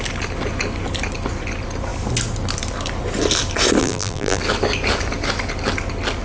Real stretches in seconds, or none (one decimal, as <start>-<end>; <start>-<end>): 0.0-3.8; 4.4-6.2